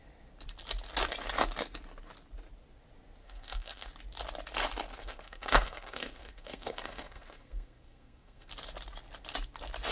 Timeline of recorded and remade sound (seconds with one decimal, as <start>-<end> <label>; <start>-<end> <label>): 0.0-3.2 recorded; 3.2-3.9 remade; 3.9-4.9 recorded; 4.9-8.5 remade; 8.5-9.9 recorded